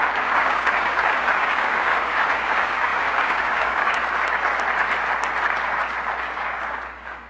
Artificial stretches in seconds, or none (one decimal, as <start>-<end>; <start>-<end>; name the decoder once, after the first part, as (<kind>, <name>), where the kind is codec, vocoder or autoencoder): 0.0-4.0 (codec, DAC); 6.2-7.3

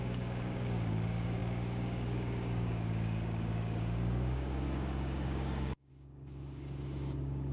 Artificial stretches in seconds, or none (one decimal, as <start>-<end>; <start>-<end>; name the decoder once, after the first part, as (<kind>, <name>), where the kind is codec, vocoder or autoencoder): 0.0-7.5 (codec, DAC)

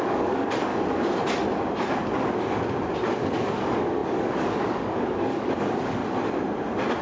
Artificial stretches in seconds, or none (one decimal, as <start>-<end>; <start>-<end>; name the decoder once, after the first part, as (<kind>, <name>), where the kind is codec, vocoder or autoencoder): 0.0-0.7 (codec, DAC); 3.1-6.0